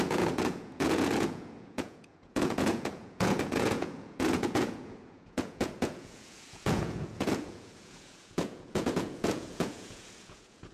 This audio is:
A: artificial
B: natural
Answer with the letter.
A